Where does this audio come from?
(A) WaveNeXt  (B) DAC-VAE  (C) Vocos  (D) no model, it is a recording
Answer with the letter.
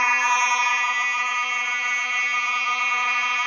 C